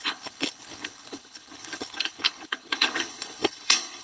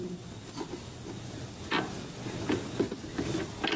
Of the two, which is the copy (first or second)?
first